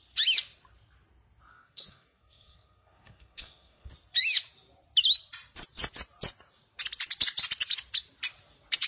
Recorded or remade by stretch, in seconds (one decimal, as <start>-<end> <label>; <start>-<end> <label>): 0.0-1.5 recorded; 1.5-3.9 remade; 3.9-8.9 recorded